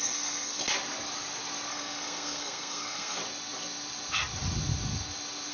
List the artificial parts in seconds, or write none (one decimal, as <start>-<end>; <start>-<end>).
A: 0.0-0.6; 1.7-3.2